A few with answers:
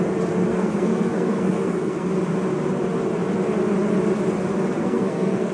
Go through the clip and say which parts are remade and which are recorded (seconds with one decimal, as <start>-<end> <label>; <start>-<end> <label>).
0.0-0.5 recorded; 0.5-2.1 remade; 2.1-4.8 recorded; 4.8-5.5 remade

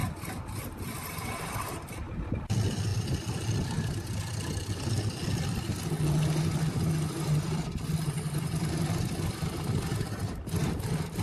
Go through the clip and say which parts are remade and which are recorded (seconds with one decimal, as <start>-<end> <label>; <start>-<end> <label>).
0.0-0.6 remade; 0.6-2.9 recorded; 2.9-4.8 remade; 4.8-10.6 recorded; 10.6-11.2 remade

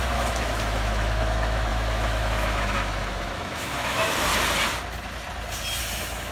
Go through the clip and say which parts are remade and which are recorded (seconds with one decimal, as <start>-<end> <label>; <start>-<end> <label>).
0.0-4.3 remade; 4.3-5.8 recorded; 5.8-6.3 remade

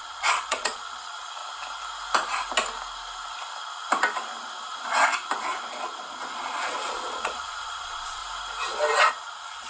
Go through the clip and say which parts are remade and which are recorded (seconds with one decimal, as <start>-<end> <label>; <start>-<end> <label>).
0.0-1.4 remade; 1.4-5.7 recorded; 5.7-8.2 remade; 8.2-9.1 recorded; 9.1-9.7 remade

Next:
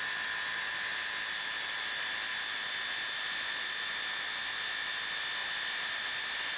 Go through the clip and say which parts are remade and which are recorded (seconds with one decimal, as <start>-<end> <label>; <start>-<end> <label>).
0.0-6.6 recorded

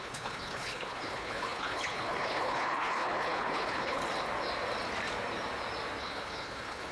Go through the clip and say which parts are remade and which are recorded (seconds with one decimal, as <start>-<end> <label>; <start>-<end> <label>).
0.0-4.0 remade; 4.0-6.0 recorded; 6.0-6.9 remade

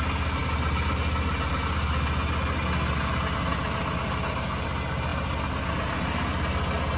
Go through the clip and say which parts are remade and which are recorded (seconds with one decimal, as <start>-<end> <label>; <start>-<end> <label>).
0.0-7.0 recorded

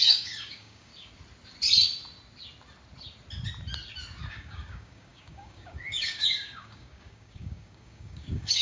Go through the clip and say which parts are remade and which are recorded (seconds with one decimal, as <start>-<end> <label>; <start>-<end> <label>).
0.0-0.9 remade; 0.9-4.3 recorded; 4.3-8.6 remade